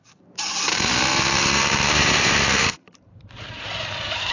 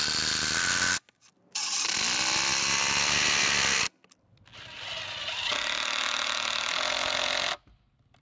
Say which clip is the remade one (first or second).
first